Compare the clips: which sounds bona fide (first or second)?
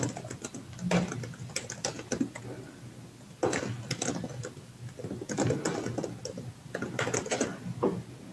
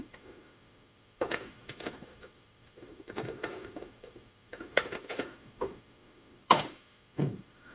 first